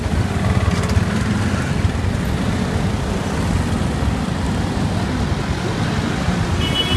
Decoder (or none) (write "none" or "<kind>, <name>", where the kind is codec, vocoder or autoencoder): none